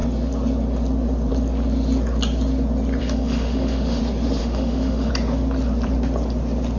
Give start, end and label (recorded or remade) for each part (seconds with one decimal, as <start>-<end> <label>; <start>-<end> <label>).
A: 0.0-3.0 recorded; 3.0-4.0 remade; 4.0-4.4 recorded; 4.4-5.1 remade; 5.1-6.8 recorded

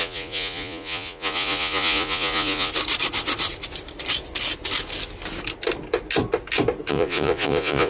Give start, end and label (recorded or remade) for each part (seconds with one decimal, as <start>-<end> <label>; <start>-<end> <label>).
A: 0.0-2.7 remade; 2.7-6.9 recorded; 6.9-7.9 remade

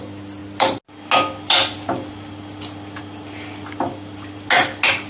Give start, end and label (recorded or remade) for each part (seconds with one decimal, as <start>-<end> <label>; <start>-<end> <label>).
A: 0.0-5.1 recorded

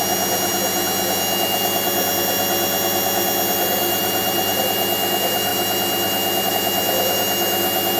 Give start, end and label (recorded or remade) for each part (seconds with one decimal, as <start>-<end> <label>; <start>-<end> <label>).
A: 0.0-4.0 recorded; 4.0-4.6 remade; 4.6-8.0 recorded

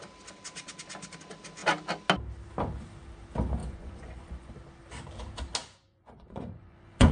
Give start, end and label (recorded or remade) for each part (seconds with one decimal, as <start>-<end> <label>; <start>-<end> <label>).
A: 0.0-3.6 recorded; 3.6-4.5 remade; 4.5-5.6 recorded; 5.6-7.1 remade

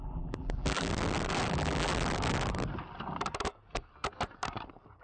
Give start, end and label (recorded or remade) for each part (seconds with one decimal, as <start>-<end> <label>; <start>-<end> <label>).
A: 0.0-0.9 remade; 0.9-1.5 recorded; 1.5-1.9 remade; 1.9-5.0 recorded

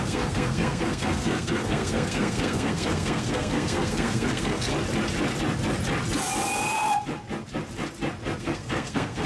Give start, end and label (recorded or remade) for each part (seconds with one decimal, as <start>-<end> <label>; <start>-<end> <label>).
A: 0.0-4.7 remade; 4.7-8.4 recorded; 8.4-9.3 remade